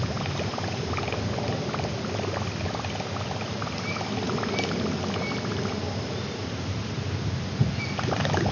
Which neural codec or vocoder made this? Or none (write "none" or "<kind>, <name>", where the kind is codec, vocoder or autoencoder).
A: none